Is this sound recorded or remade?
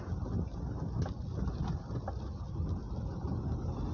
recorded